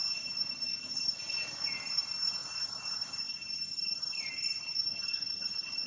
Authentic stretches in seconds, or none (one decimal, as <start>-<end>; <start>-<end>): 0.0-3.7; 4.3-4.9